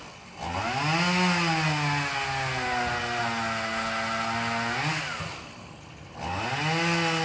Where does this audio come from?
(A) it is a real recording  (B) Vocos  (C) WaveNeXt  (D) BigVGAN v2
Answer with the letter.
A